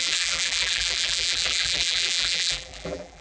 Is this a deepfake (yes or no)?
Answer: yes